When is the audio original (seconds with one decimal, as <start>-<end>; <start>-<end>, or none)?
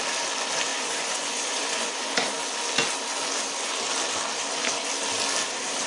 0.0-0.7; 1.9-5.9